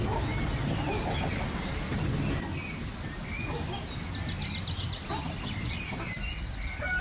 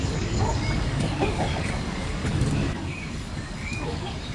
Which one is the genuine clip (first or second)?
first